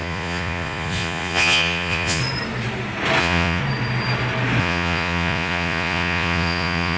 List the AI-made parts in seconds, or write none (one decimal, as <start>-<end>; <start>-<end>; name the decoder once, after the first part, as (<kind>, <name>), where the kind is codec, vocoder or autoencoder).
0.0-2.2 (vocoder, Vocos); 3.2-3.6; 4.6-7.0